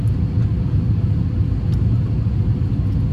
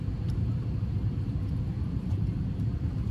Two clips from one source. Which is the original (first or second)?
first